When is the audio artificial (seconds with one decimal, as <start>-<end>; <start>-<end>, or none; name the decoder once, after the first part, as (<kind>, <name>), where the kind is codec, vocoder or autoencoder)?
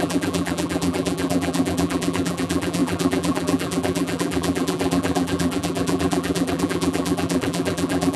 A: 0.0-8.2 (vocoder, BigVGAN v2)